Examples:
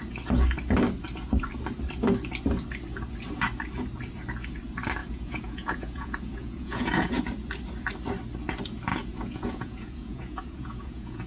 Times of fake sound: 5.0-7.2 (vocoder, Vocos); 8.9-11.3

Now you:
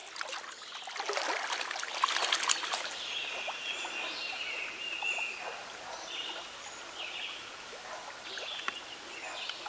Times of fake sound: none

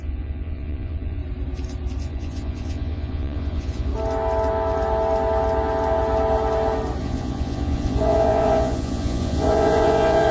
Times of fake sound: 0.0-1.2 (vocoder, Vocos); 2.0-3.9; 7.0-10.3

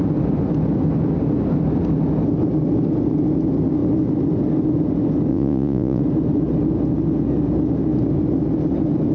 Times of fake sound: 5.3-6.0 (vocoder, Vocos)

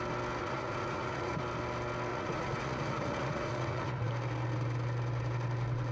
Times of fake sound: 0.4-1.4 (vocoder, Vocos); 2.1-4.1

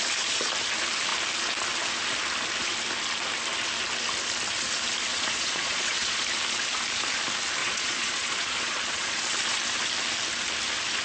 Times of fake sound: 5.1-6.2 (vocoder, Vocos); 7.6-9.2

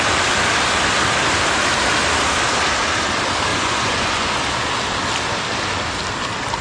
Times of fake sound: 3.5-4.3 (vocoder, Vocos)

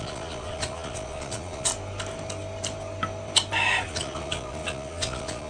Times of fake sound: 0.0-1.7 (vocoder, Vocos); 3.8-5.5